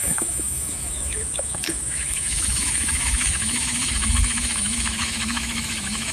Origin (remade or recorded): remade